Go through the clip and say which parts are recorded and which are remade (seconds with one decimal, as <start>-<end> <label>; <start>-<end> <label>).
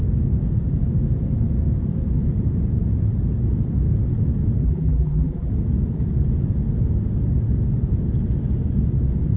0.0-4.6 recorded; 4.6-5.5 remade; 5.5-9.4 recorded